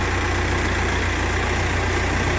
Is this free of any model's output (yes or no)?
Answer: yes